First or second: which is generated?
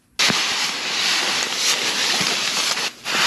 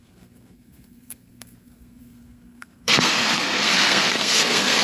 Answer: second